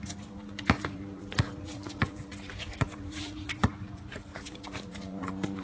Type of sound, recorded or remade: remade